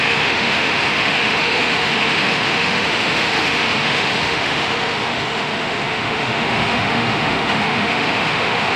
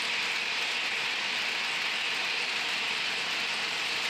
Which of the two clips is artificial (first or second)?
first